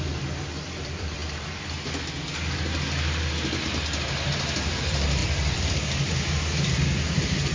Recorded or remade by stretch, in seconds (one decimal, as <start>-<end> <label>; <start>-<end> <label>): 0.0-1.2 remade; 1.2-4.7 recorded; 4.7-7.5 remade